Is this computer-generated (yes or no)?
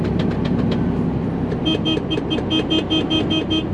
no